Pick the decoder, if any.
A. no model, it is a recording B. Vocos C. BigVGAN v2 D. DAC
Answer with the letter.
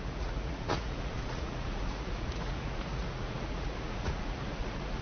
B